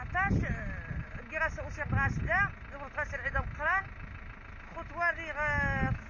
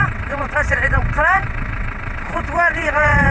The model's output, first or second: second